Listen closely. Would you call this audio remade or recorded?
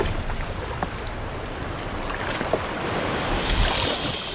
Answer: remade